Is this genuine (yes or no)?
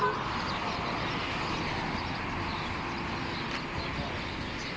yes